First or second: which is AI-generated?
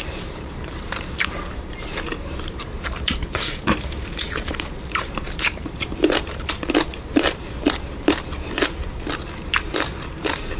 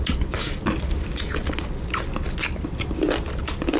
first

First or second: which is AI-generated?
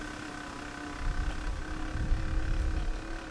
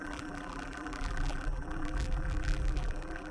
second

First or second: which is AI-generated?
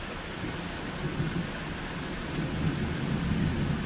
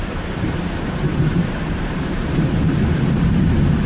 second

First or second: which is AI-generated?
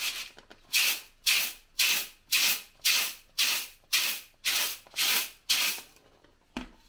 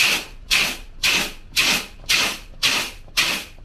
second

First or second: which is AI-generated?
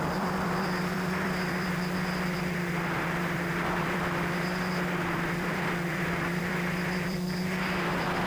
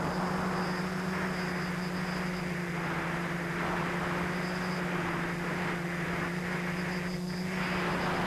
first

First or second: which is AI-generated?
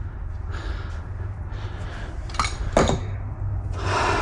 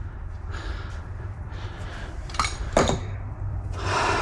second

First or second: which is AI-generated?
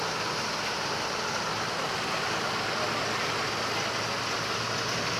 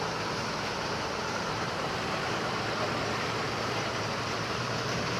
second